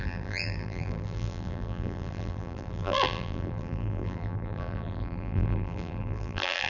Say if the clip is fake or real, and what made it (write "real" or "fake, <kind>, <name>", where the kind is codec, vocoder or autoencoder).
fake, vocoder, BigVGAN v2